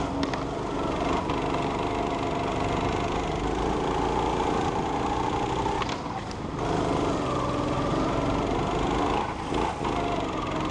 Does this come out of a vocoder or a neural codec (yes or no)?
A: no